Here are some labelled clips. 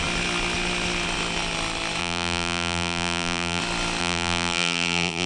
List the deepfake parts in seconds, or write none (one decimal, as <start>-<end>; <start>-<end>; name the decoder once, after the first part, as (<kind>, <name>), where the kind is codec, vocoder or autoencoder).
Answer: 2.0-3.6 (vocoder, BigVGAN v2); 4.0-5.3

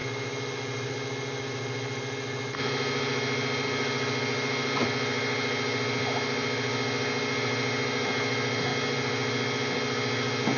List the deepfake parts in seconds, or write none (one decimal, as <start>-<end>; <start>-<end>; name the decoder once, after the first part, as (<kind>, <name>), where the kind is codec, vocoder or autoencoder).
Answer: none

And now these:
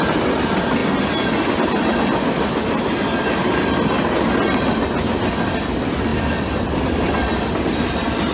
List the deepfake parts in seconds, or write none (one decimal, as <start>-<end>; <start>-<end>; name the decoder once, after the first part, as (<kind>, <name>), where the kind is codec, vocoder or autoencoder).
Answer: none